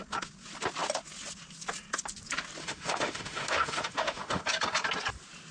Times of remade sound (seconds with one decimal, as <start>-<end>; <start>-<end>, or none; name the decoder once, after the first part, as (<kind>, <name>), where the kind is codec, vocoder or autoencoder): 2.6-4.4 (autoencoder, DAC-VAE)